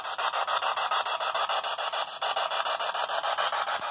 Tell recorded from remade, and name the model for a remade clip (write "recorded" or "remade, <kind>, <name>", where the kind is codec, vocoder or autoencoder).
recorded